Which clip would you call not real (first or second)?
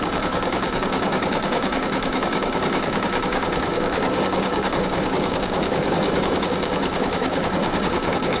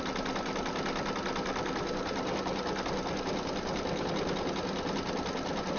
first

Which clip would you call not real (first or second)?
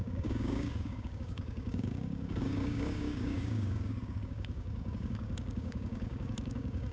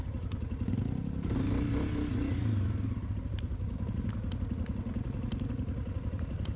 first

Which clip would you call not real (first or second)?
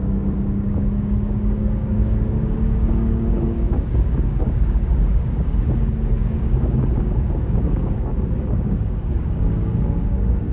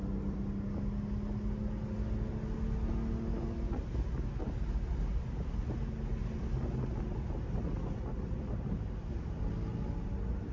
first